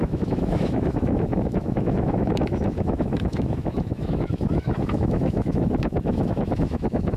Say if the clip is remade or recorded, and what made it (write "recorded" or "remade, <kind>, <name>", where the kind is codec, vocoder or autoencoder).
remade, autoencoder, DAC-VAE